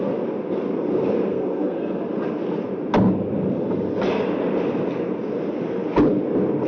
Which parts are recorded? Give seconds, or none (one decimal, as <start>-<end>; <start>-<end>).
0.0-1.3; 2.0-6.7